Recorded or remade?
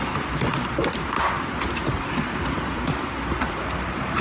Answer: remade